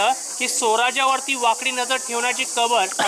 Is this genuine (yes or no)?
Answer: yes